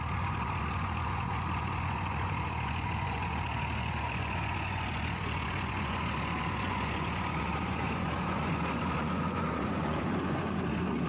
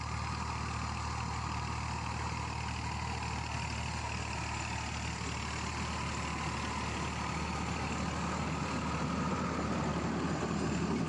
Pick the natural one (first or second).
second